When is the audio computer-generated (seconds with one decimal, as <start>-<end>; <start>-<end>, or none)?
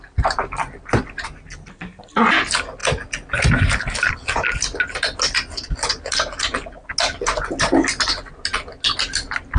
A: none